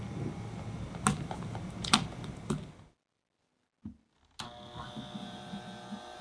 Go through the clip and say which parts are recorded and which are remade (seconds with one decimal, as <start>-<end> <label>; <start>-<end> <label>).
0.0-5.2 recorded; 5.2-6.2 remade